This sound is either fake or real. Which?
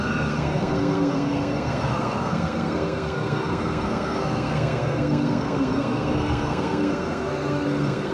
fake